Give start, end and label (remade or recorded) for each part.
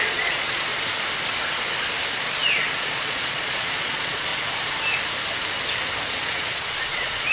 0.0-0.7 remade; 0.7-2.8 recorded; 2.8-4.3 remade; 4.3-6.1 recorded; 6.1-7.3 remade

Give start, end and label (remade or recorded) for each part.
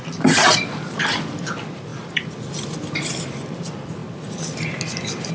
0.0-4.0 remade; 4.0-5.3 recorded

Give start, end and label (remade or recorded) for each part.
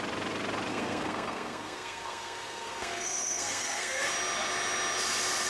0.0-0.7 recorded; 0.7-4.0 remade; 4.0-5.5 recorded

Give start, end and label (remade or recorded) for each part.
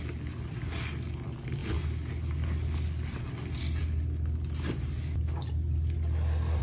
0.0-6.6 recorded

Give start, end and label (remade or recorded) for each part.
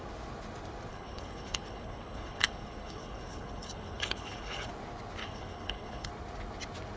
0.0-0.9 recorded; 0.9-4.7 remade; 4.7-5.2 recorded; 5.2-6.1 remade; 6.1-7.0 recorded